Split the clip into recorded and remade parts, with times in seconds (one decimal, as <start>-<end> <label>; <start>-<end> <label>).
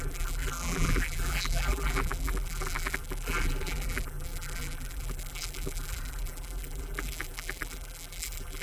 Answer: 0.0-8.6 remade